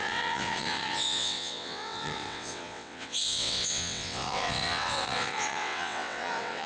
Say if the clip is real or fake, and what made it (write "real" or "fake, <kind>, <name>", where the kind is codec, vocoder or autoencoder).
fake, vocoder, WaveNeXt